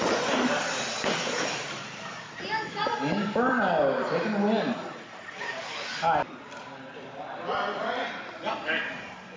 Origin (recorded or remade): recorded